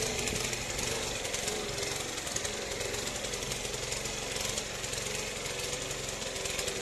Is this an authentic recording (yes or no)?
yes